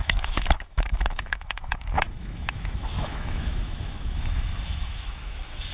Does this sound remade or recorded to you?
remade